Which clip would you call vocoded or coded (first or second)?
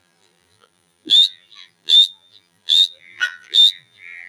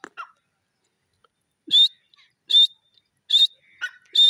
first